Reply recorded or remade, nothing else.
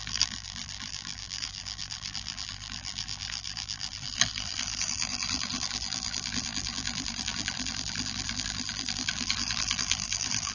remade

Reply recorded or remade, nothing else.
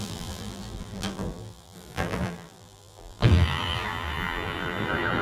remade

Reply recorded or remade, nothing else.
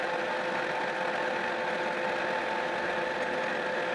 recorded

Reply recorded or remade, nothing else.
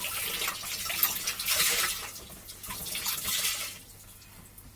recorded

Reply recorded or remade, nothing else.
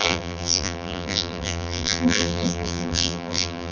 remade